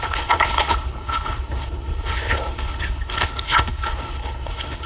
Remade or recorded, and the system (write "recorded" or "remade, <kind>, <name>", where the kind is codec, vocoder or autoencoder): remade, codec, HILCodec